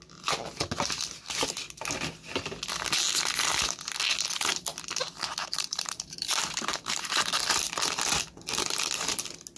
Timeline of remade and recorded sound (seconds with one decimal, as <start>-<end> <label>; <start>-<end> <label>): 0.0-5.4 recorded; 5.4-7.2 remade; 7.2-9.6 recorded